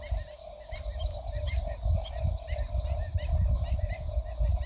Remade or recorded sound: recorded